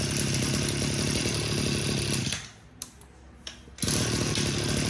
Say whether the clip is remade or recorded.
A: recorded